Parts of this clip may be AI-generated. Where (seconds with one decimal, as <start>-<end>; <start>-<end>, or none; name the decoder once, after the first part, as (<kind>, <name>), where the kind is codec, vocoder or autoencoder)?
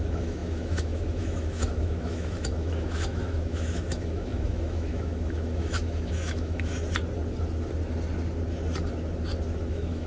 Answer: 0.0-6.7 (autoencoder, DAC-VAE); 9.7-10.1